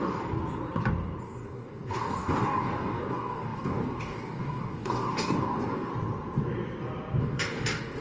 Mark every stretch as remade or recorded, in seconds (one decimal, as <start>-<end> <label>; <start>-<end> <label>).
0.0-0.4 remade; 0.4-1.2 recorded; 1.2-5.9 remade; 5.9-7.2 recorded; 7.2-8.0 remade

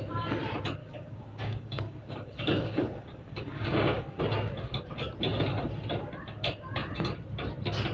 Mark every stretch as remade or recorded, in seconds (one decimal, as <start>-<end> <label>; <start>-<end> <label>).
0.0-0.8 recorded; 0.8-4.2 remade; 4.2-7.9 recorded

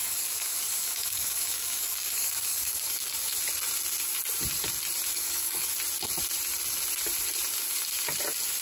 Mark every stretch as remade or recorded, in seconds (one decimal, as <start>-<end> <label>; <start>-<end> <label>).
0.0-3.3 remade; 3.3-5.1 recorded; 5.1-5.7 remade; 5.7-8.6 recorded

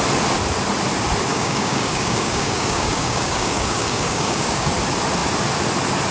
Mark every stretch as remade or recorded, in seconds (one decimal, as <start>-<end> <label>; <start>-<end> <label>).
0.0-1.3 recorded; 1.3-4.7 remade; 4.7-6.1 recorded

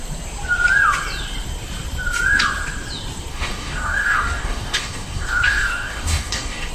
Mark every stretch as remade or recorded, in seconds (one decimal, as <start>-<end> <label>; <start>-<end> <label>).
0.0-3.3 recorded; 3.3-6.7 remade

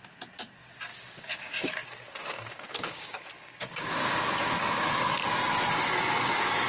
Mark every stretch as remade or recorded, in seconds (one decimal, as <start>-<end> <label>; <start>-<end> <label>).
0.0-0.9 recorded; 0.9-4.9 remade; 4.9-6.7 recorded